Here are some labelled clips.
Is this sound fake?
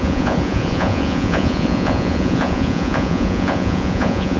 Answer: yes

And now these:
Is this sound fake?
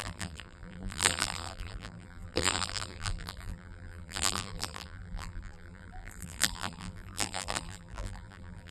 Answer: yes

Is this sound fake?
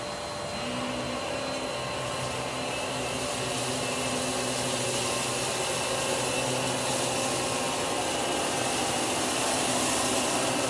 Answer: no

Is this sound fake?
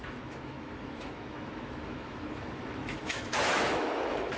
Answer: yes